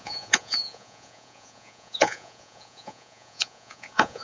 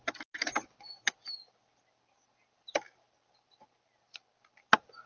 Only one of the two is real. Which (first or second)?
second